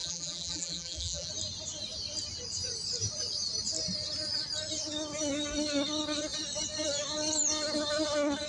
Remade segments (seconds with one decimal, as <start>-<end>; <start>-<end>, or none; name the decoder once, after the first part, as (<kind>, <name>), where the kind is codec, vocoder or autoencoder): 0.0-1.3 (vocoder, BigVGAN v2)